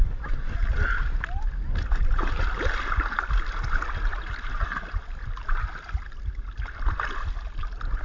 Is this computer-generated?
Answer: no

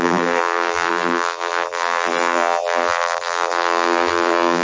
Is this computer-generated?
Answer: yes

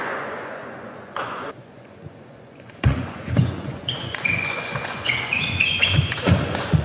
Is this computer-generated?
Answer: yes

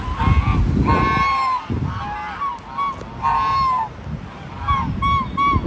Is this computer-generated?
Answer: no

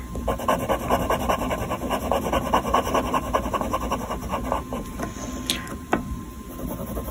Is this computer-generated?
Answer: no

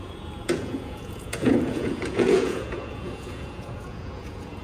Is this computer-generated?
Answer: yes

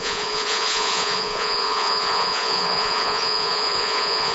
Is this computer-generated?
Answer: yes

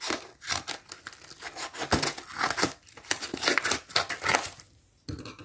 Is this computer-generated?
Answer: no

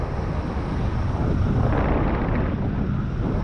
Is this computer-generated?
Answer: no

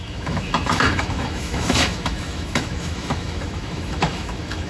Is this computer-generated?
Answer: yes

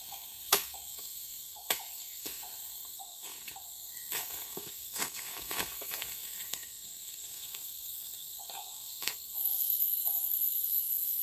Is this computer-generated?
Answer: yes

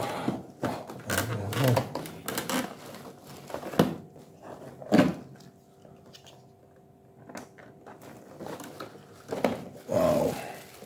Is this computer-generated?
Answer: no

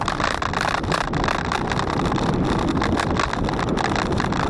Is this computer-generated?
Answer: no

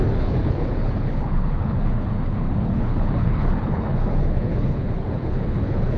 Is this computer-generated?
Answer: yes